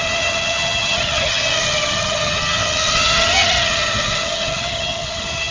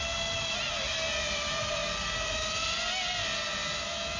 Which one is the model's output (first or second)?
first